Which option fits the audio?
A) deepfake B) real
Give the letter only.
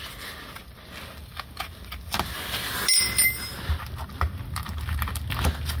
B